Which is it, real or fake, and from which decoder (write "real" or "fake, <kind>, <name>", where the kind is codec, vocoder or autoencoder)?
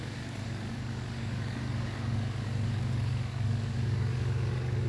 fake, codec, DAC